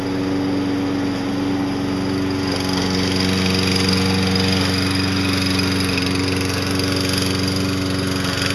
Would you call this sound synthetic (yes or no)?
no